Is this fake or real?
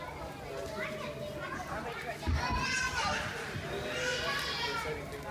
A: real